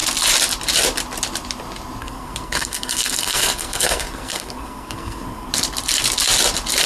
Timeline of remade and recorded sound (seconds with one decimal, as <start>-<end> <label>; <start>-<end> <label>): 0.0-2.0 recorded; 2.0-5.5 remade; 5.5-6.9 recorded